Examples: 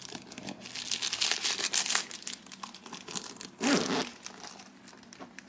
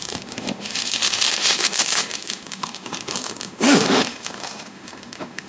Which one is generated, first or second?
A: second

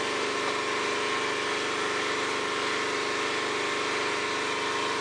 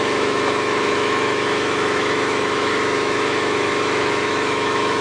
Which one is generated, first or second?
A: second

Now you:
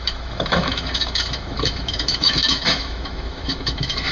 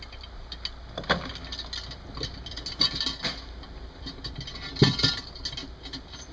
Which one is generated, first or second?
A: first